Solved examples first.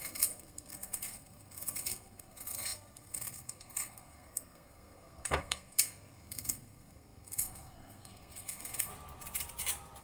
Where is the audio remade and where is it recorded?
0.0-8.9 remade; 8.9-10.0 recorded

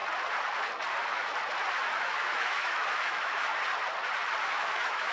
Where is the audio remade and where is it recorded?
0.0-1.9 recorded; 1.9-3.5 remade; 3.5-4.5 recorded; 4.5-5.1 remade

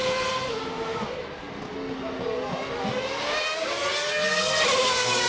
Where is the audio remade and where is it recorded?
0.0-3.2 recorded; 3.2-3.8 remade; 3.8-4.8 recorded; 4.8-5.3 remade

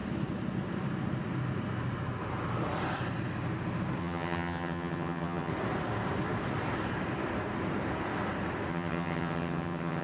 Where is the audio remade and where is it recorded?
0.0-4.0 recorded; 4.0-5.5 remade; 5.5-8.7 recorded; 8.7-10.0 remade